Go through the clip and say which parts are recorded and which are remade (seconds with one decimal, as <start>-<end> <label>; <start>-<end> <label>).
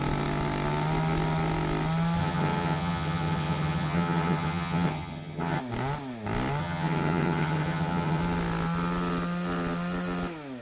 0.0-2.2 recorded; 2.2-5.6 remade; 5.6-6.6 recorded; 6.6-8.2 remade; 8.2-10.6 recorded